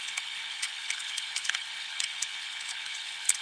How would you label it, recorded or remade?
remade